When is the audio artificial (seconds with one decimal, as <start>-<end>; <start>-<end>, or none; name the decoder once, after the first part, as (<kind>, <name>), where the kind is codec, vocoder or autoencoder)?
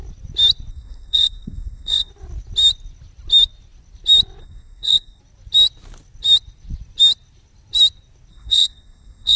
0.7-2.1 (codec, SNAC); 4.4-5.2; 8.3-9.4